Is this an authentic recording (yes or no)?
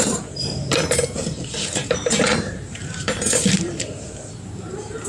no